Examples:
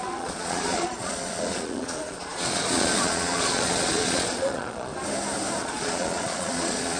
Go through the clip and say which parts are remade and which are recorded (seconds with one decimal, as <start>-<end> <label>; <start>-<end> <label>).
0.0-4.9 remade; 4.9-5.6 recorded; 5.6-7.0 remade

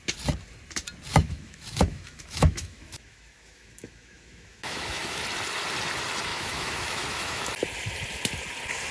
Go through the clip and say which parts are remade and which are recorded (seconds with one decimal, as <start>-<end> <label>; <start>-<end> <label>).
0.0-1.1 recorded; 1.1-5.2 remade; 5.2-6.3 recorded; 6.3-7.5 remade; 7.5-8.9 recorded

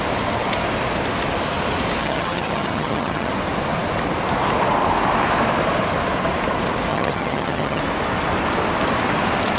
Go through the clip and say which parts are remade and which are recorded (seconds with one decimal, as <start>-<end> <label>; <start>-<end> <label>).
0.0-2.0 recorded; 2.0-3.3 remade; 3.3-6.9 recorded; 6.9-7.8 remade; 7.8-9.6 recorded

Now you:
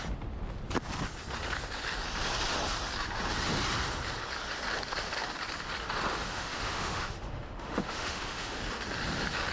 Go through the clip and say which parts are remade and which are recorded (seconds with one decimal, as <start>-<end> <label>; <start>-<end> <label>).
0.0-6.3 recorded; 6.3-8.6 remade; 8.6-9.5 recorded

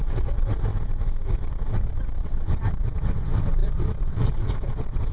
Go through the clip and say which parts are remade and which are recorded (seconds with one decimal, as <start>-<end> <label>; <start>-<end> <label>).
0.0-0.7 remade; 0.7-1.4 recorded; 1.4-5.1 remade

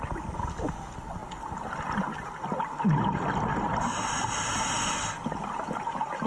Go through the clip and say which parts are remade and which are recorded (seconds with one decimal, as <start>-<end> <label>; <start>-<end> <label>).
0.0-6.3 recorded